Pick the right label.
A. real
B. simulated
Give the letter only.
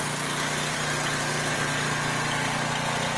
A